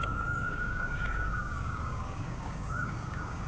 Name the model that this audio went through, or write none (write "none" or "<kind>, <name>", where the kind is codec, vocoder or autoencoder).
codec, DAC